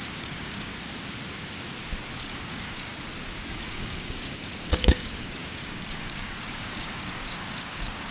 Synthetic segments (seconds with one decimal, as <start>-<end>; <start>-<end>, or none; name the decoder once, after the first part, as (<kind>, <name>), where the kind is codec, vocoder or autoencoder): 0.0-0.7 (codec, DAC); 2.2-2.9; 3.5-8.1